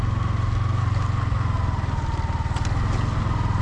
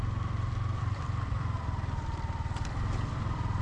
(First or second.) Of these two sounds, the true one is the first